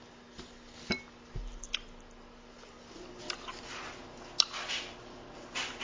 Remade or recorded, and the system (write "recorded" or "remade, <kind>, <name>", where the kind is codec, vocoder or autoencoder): recorded